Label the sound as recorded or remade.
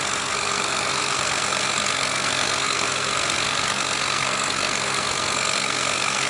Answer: remade